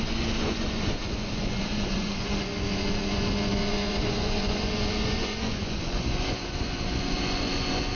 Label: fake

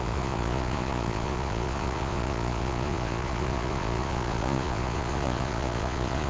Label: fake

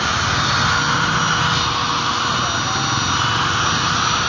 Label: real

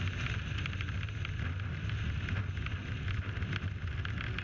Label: real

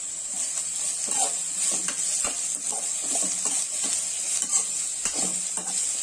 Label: real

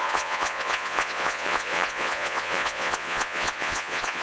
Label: fake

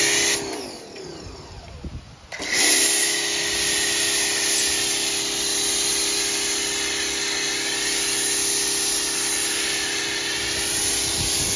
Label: real